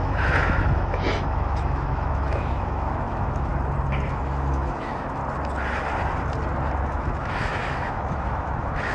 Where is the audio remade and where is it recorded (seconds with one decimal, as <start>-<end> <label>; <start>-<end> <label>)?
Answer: 0.0-3.5 remade; 3.5-4.1 recorded; 4.1-5.2 remade; 5.2-6.8 recorded; 6.8-8.9 remade